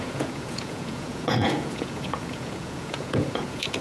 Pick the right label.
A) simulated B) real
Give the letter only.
A